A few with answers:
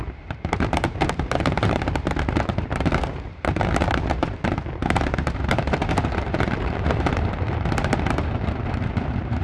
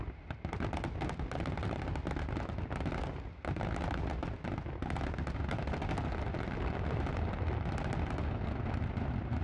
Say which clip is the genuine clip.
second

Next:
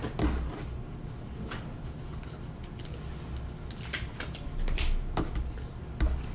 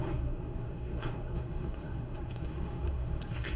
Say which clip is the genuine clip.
first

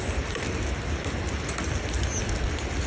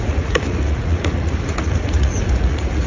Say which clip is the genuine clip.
first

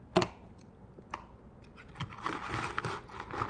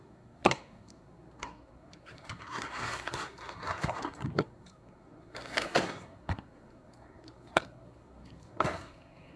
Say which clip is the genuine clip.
first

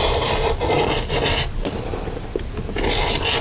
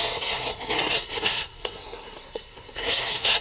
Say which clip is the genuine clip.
first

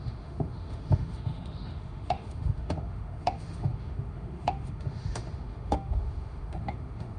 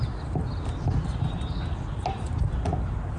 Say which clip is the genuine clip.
second